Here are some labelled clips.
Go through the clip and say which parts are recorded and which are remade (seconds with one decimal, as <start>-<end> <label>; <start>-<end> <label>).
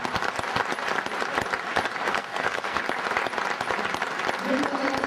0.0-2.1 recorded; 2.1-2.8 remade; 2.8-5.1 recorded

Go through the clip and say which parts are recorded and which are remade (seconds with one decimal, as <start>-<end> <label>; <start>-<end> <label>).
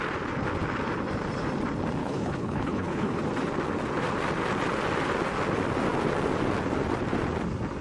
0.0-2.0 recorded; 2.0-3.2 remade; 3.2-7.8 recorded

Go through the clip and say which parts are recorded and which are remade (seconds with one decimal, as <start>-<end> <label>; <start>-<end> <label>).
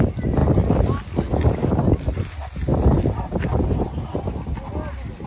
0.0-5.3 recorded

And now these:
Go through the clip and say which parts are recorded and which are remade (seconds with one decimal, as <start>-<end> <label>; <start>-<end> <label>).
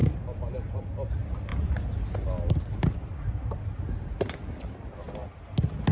0.0-5.9 recorded